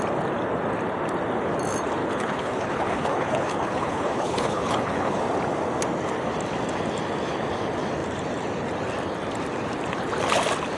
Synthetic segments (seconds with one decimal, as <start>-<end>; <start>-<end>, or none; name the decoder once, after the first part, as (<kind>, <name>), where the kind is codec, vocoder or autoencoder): 2.0-5.2 (codec, HILCodec)